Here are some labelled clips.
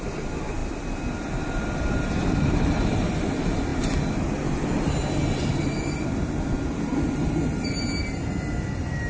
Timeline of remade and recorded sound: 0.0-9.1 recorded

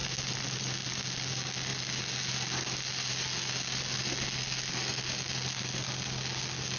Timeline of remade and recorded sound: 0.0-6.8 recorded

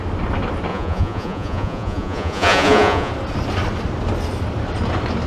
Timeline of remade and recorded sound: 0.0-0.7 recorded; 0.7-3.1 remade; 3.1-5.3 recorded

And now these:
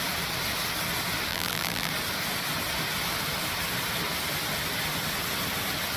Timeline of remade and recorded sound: 0.0-1.3 recorded; 1.3-1.9 remade; 1.9-6.0 recorded